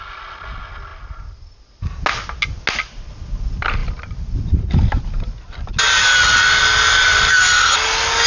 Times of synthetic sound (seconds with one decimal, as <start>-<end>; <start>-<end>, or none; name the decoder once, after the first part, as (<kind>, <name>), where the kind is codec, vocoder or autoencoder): none